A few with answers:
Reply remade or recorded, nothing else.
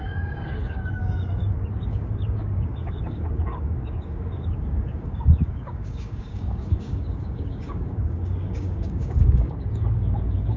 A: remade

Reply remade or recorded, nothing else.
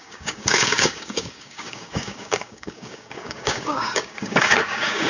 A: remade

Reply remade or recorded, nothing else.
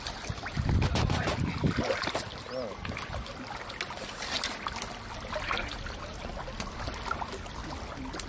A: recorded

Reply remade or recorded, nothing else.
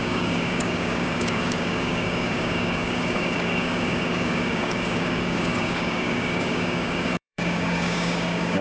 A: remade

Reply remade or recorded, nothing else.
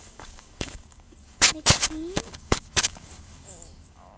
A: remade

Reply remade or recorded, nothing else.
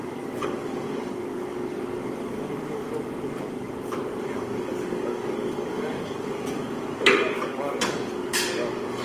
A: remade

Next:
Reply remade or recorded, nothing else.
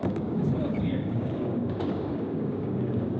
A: remade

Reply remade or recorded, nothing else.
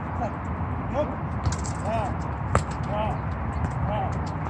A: recorded